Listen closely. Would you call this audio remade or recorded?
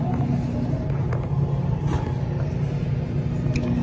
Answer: recorded